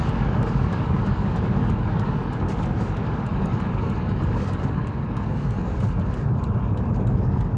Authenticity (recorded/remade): remade